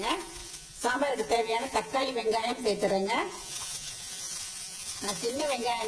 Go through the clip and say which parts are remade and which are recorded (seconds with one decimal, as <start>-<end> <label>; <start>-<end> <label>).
0.0-5.9 remade